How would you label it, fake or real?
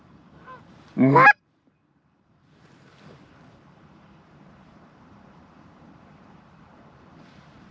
fake